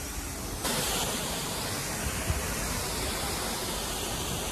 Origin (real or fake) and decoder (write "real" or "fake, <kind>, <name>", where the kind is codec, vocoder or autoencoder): real